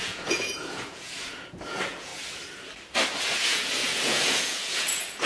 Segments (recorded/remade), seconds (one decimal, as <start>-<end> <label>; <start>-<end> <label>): 0.0-2.1 remade; 2.1-3.2 recorded; 3.2-5.3 remade